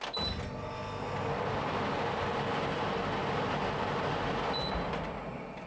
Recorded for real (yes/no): yes